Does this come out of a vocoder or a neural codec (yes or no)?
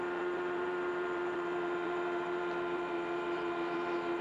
yes